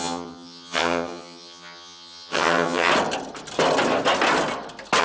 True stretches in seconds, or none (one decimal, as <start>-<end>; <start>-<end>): 2.9-5.0